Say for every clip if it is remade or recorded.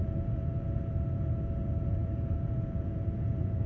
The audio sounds remade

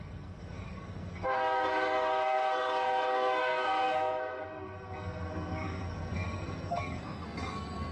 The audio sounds remade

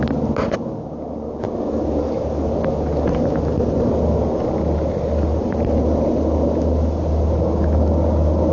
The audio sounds recorded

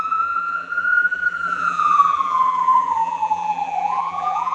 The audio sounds remade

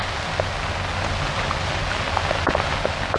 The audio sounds recorded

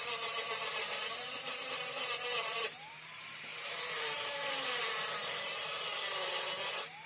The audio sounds remade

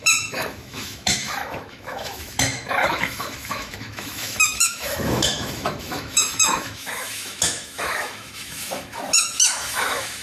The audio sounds remade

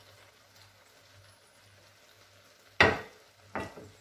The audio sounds recorded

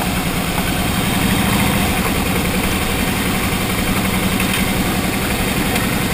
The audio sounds recorded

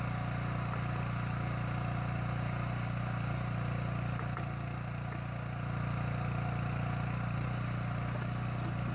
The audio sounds recorded